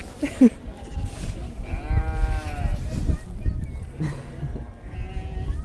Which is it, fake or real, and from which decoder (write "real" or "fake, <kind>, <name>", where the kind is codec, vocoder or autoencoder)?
real